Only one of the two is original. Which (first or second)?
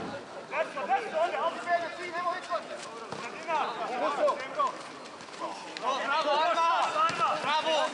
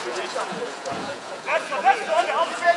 first